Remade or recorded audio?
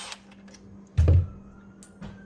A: recorded